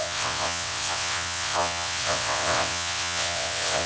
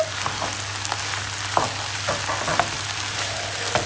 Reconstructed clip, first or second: first